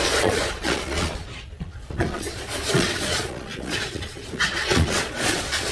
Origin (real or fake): fake